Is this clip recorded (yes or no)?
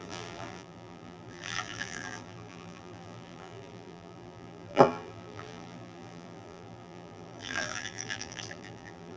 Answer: no